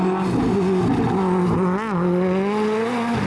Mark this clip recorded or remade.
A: recorded